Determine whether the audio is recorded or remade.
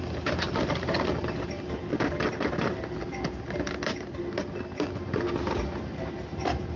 recorded